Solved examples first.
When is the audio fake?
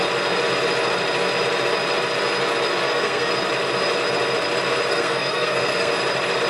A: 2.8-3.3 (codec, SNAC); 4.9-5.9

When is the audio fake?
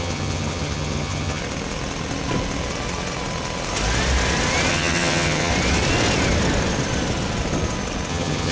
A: 0.0-1.4 (vocoder, HiFi-GAN); 4.7-5.5; 8.1-8.5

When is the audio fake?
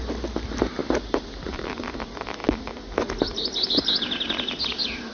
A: 0.8-1.8 (vocoder, BigVGAN v2)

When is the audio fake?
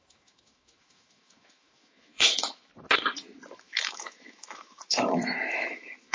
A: 0.0-2.7 (autoencoder, DAC-VAE); 3.6-6.1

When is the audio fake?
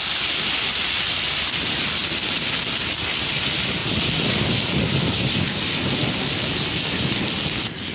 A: none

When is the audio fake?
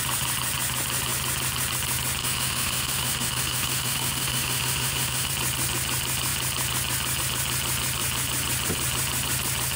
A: 2.2-5.3 (autoencoder, DAC-VAE)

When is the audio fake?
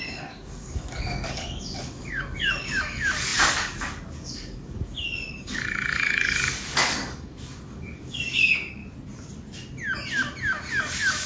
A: 0.0-8.8 (codec, DAC); 10.8-11.3